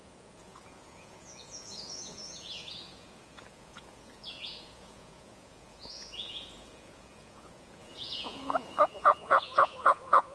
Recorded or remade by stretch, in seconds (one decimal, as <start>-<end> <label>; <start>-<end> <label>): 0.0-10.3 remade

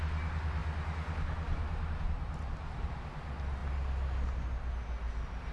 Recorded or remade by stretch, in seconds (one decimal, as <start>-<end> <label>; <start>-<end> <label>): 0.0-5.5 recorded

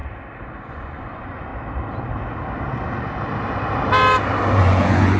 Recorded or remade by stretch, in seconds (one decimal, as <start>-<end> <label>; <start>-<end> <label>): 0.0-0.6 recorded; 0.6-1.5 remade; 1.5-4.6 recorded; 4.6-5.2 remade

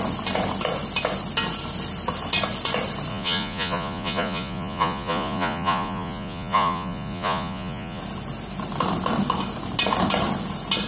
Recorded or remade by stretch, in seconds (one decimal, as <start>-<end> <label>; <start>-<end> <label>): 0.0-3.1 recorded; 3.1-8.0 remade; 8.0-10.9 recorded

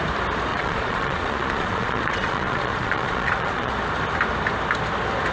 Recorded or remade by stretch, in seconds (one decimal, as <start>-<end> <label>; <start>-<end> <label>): 0.0-0.5 recorded; 0.5-3.7 remade; 3.7-5.3 recorded

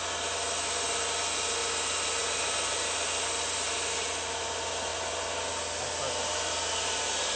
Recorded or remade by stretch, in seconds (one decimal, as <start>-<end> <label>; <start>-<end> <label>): 0.0-7.4 recorded

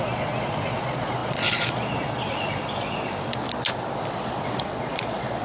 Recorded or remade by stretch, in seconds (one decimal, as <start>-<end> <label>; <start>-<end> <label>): 0.0-3.4 remade; 3.4-4.2 recorded; 4.2-5.4 remade